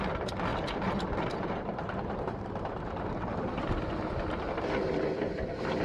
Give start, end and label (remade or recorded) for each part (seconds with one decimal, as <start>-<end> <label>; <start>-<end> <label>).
0.0-0.5 recorded; 0.5-3.9 remade; 3.9-5.8 recorded